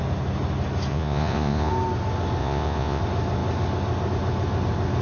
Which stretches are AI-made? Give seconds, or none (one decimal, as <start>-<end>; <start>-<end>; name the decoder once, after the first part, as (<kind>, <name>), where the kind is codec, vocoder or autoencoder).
0.9-1.7 (vocoder, Vocos); 2.4-3.0